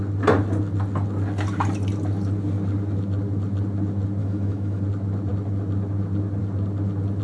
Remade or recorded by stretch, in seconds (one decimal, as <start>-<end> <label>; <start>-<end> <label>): 0.0-4.2 recorded; 4.2-4.8 remade; 4.8-7.2 recorded